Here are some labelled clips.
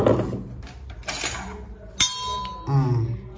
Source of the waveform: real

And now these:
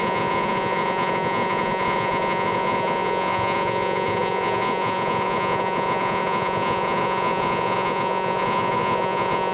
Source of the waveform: fake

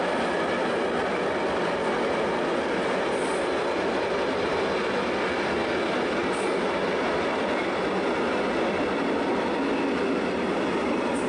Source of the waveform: real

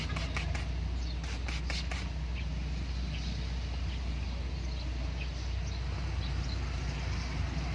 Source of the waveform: real